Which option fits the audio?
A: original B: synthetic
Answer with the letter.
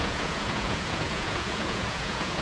B